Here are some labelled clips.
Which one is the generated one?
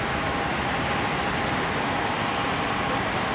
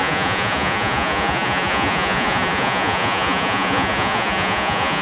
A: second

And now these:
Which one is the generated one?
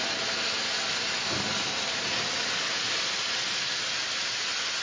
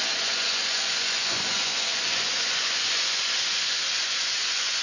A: second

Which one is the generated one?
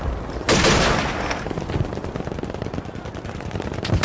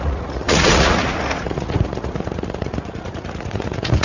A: second